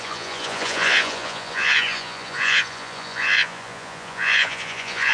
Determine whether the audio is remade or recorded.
remade